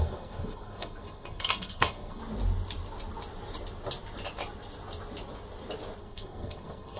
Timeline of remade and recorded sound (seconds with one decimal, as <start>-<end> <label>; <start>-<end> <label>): 0.0-2.2 remade; 2.2-6.0 recorded; 6.0-7.0 remade

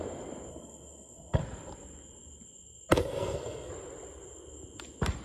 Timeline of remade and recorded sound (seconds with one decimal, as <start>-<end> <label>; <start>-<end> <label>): 0.0-0.5 recorded; 0.5-1.4 remade; 1.4-3.0 recorded; 3.0-3.7 remade; 3.7-5.2 recorded

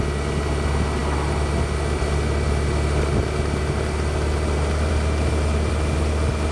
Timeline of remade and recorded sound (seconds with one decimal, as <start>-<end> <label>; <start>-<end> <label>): 0.0-6.5 recorded

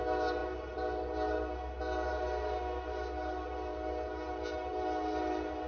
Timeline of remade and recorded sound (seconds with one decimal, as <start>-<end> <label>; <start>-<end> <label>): 0.0-5.7 recorded

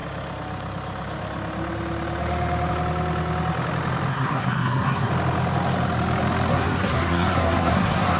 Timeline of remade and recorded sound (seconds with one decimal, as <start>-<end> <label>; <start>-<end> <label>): 0.0-4.1 recorded; 4.1-5.1 remade; 5.1-6.5 recorded; 6.5-8.2 remade

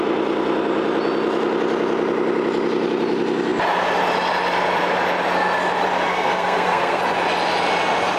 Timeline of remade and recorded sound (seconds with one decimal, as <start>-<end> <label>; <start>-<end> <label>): 0.0-6.1 recorded; 6.1-7.0 remade; 7.0-8.2 recorded

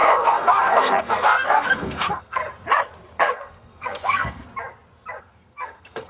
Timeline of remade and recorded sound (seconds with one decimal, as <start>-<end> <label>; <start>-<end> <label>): 0.0-2.4 remade; 2.4-3.2 recorded; 3.2-4.4 remade; 4.4-5.2 recorded; 5.2-6.1 remade

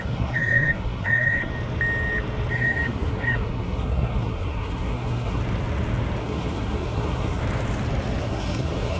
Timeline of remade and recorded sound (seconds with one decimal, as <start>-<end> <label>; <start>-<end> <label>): 0.0-1.5 remade; 1.5-2.5 recorded; 2.5-5.4 remade; 5.4-6.2 recorded; 6.2-7.4 remade; 7.4-8.2 recorded; 8.2-9.0 remade